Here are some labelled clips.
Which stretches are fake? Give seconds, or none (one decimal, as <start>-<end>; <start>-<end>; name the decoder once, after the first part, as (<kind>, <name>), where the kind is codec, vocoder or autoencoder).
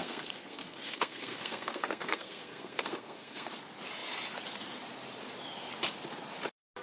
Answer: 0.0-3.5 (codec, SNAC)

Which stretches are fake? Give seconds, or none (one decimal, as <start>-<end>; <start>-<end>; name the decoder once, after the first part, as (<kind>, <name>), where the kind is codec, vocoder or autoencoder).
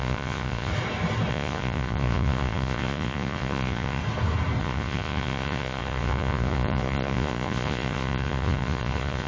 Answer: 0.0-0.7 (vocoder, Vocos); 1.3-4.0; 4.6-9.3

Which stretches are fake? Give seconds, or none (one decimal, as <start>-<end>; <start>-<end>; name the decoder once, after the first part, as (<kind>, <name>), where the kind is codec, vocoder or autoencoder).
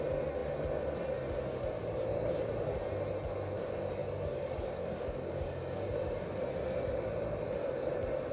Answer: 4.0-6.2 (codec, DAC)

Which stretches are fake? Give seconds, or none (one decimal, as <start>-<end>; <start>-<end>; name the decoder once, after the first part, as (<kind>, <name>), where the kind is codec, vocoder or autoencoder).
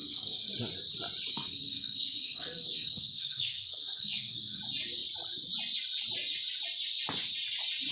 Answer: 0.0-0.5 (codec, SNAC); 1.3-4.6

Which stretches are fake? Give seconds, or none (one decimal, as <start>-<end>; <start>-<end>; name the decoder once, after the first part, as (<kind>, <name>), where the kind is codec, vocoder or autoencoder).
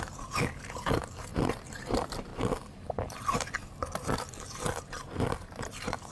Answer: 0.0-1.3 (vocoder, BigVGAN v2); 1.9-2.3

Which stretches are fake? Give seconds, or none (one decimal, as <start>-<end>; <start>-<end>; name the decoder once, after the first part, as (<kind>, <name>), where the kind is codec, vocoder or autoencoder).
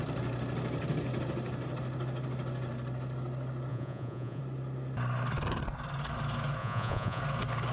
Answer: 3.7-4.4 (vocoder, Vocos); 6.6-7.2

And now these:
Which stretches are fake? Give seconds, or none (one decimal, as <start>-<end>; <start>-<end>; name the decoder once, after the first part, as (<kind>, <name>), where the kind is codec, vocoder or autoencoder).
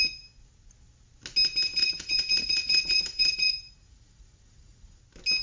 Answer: 1.8-5.0 (vocoder, Vocos)